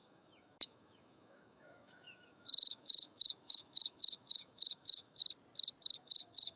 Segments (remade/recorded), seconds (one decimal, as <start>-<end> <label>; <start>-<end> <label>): 0.0-5.2 remade; 5.2-6.0 recorded; 6.0-6.6 remade